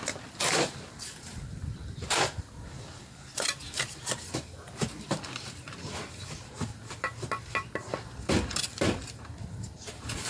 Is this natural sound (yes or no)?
no